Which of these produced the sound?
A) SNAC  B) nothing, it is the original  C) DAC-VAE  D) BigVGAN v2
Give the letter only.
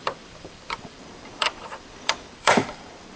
D